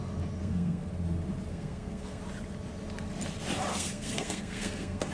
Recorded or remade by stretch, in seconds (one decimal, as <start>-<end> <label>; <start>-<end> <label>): 0.0-0.4 recorded; 0.4-0.9 remade; 0.9-1.5 recorded; 1.5-2.2 remade; 2.2-3.7 recorded; 3.7-5.1 remade